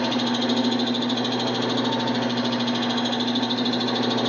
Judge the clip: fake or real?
real